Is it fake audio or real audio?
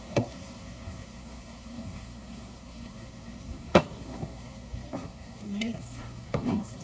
fake